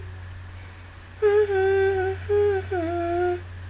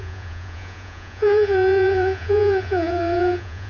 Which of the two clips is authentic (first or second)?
first